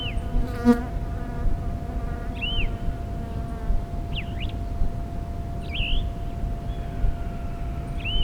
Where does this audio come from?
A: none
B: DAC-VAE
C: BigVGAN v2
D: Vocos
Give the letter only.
A